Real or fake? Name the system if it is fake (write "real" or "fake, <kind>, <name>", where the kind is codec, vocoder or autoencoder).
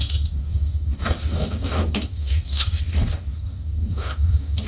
fake, codec, DAC